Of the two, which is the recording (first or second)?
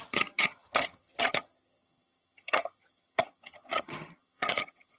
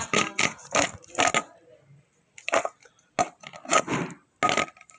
second